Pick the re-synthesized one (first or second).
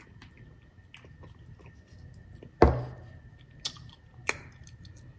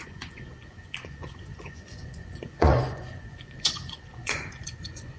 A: second